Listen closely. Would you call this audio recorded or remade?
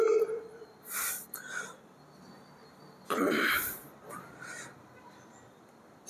recorded